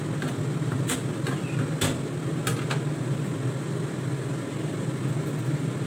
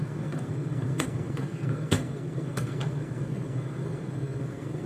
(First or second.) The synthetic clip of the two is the second